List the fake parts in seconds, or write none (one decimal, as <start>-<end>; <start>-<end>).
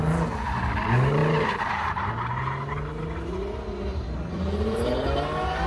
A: 1.2-2.1; 3.9-4.9